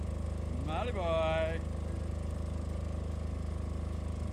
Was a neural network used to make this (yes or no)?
no